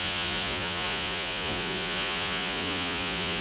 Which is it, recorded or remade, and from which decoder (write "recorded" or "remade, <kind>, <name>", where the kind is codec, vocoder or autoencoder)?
remade, vocoder, Vocos